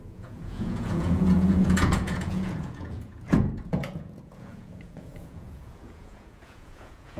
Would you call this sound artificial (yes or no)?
yes